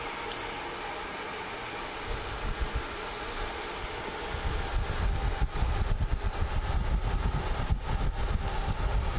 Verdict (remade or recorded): recorded